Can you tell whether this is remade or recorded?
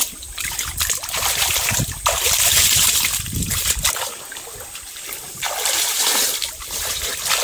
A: recorded